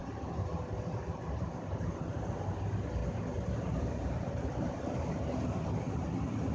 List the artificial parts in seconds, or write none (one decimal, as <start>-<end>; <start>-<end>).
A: 0.0-0.6; 3.0-5.2

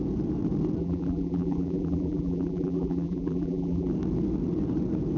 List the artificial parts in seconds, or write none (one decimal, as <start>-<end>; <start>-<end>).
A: 0.8-3.9

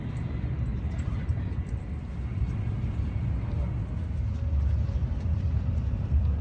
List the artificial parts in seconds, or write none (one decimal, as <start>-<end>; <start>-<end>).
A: 0.7-3.3; 5.0-6.4

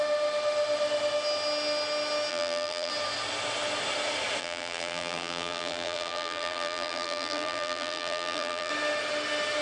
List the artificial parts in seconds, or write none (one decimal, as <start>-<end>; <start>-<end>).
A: 2.3-2.9; 4.4-8.7

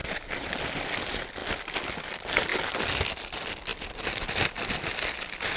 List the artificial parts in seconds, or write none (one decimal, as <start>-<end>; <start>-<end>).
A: 0.0-0.8; 3.7-4.6